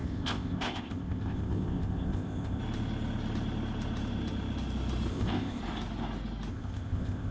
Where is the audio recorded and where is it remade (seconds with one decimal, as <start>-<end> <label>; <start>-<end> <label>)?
0.0-2.6 remade; 2.6-5.1 recorded; 5.1-5.6 remade; 5.6-6.5 recorded; 6.5-7.3 remade